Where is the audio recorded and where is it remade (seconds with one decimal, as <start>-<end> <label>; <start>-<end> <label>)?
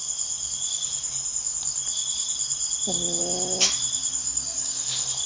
0.0-4.2 recorded; 4.2-4.8 remade; 4.8-5.3 recorded